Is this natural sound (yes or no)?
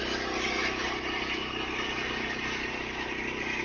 yes